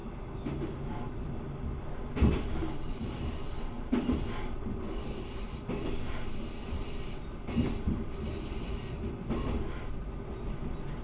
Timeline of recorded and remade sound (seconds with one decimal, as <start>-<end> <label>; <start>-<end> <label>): 0.0-1.3 remade; 1.3-2.6 recorded; 2.6-4.6 remade; 4.6-11.0 recorded